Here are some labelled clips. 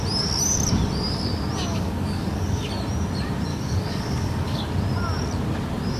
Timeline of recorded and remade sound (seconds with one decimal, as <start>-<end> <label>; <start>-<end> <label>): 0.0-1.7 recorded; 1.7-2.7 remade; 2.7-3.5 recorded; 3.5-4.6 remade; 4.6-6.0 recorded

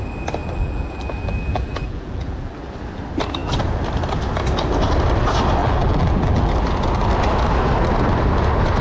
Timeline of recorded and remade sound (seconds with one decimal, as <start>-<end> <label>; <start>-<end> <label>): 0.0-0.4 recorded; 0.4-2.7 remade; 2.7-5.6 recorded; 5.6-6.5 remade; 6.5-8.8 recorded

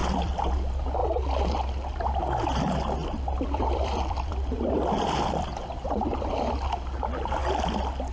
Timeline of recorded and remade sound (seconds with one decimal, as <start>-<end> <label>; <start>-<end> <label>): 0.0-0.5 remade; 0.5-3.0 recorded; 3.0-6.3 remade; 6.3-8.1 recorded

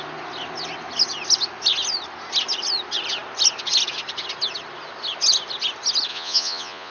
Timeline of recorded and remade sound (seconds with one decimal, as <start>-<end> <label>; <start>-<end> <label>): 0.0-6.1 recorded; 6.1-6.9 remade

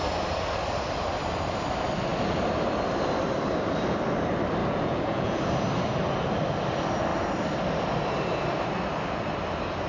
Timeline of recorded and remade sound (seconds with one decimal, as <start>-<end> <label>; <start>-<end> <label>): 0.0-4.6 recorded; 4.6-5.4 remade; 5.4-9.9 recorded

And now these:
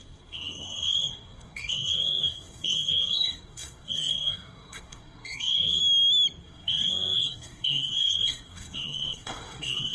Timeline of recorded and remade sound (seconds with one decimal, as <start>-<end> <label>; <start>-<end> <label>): 0.0-5.8 remade; 5.8-6.4 recorded; 6.4-9.9 remade